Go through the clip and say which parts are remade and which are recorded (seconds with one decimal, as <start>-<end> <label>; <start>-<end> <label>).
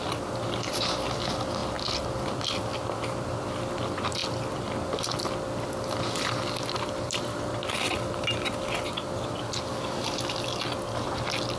0.0-11.6 recorded